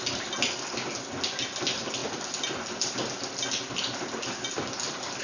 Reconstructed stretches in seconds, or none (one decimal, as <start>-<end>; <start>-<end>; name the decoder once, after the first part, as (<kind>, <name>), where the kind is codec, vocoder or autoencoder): none